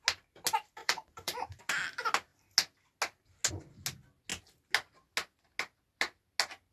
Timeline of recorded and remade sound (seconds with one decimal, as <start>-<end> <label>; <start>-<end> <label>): 0.0-0.8 recorded; 0.8-1.6 remade; 1.6-6.7 recorded